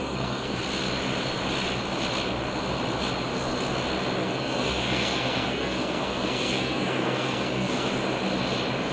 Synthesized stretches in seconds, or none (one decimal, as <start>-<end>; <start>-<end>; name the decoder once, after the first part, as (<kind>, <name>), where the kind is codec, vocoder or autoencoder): 0.0-0.6 (codec, SNAC); 4.2-7.9